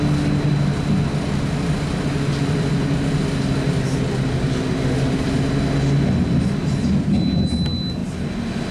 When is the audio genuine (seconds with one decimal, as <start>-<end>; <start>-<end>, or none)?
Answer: 0.0-8.7